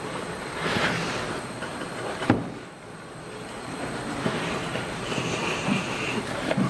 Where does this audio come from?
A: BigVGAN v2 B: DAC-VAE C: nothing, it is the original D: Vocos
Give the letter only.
A